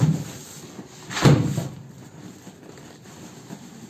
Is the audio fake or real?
real